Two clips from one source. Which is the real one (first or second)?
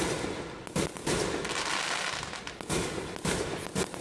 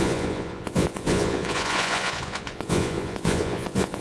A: first